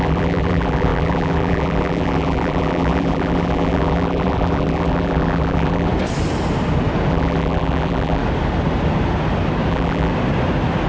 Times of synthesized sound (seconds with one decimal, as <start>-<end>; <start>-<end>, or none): 0.0-5.9; 7.1-8.2; 9.7-10.1